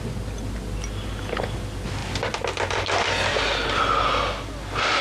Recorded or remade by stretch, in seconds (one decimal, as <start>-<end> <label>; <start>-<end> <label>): 0.0-5.0 recorded